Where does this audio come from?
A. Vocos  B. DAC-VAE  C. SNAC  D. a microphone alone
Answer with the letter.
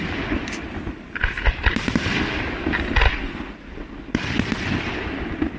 D